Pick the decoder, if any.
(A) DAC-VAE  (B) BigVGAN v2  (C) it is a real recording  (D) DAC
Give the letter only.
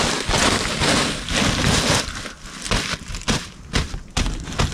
C